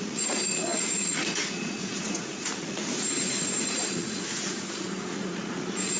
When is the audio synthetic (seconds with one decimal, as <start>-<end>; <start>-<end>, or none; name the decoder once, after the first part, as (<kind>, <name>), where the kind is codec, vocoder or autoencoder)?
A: 0.0-6.0 (vocoder, Vocos)

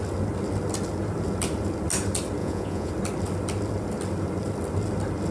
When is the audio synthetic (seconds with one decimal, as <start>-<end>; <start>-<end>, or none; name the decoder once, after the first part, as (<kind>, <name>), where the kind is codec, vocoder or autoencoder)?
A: 2.4-2.9 (vocoder, Vocos)